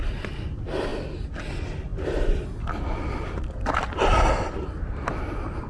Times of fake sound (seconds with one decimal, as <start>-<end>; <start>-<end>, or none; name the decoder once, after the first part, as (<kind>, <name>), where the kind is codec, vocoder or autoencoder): none